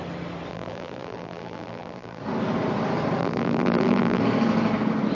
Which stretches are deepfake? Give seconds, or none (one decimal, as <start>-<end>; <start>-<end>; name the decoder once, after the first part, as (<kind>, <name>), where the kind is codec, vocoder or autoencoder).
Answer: 0.5-2.2 (vocoder, BigVGAN v2); 3.2-4.2